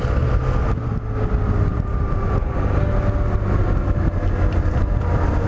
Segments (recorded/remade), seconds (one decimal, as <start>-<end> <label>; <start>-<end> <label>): 0.0-5.5 recorded